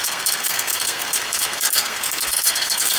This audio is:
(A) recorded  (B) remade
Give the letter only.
B